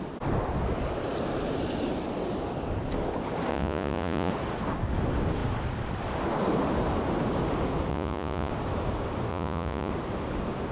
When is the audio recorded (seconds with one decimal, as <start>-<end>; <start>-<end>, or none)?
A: 0.0-3.5; 4.3-7.9; 8.5-9.3; 9.9-10.7